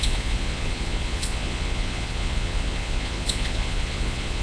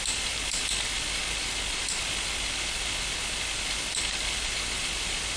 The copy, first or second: first